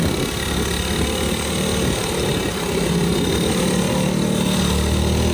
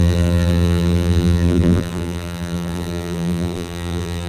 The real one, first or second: first